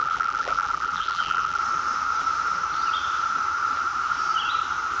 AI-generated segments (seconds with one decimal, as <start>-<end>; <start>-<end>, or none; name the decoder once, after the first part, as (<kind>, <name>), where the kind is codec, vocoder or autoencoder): 0.0-1.6 (vocoder, BigVGAN v2)